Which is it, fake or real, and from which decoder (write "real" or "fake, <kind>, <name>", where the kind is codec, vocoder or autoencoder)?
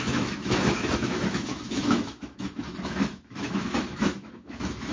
fake, autoencoder, DAC-VAE